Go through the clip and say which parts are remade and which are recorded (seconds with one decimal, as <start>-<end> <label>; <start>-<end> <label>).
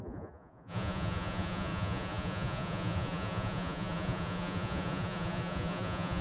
0.0-6.2 remade